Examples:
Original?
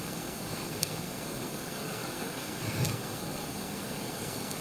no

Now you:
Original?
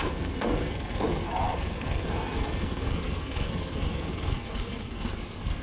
no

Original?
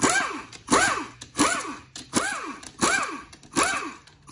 yes